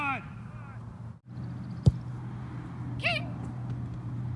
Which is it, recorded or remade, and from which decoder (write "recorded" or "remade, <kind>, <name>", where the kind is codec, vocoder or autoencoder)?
recorded